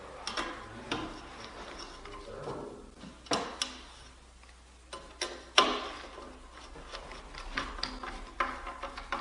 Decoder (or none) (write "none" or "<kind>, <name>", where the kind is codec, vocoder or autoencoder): none